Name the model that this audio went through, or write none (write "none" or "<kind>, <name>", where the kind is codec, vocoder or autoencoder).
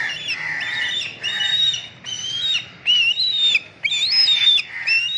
none